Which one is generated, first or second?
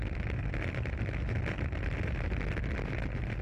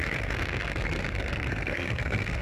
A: second